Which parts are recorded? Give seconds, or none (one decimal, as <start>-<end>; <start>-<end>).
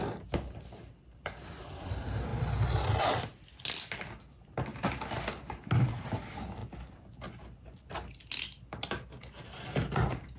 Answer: 0.0-10.4